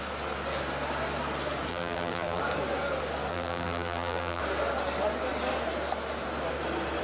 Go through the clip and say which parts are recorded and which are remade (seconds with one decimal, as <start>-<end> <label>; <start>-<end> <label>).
0.0-1.7 recorded; 1.7-2.4 remade; 2.4-3.3 recorded; 3.3-4.4 remade; 4.4-7.0 recorded